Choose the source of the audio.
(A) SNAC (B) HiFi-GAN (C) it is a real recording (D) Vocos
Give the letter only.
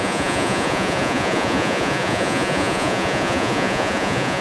D